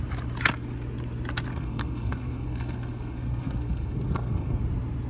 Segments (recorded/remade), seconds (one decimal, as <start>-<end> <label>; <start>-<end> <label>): 0.0-1.5 recorded; 1.5-4.6 remade; 4.6-5.1 recorded